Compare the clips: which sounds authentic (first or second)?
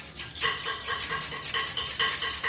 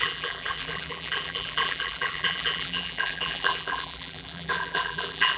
first